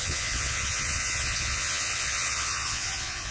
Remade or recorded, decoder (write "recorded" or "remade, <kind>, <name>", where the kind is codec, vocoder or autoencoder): remade, vocoder, Vocos